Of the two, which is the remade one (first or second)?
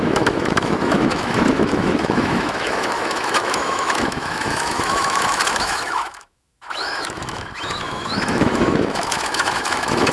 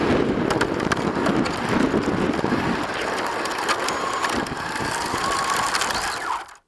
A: first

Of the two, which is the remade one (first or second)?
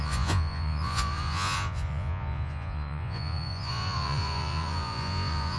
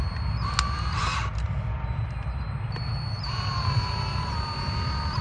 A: first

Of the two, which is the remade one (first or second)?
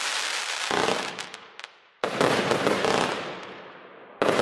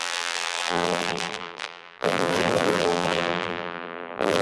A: second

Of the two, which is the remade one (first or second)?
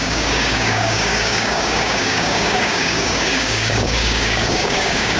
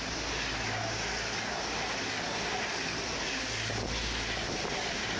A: first